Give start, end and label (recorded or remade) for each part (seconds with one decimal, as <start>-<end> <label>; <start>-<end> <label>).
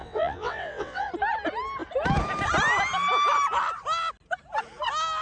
0.0-1.1 remade; 1.1-5.2 recorded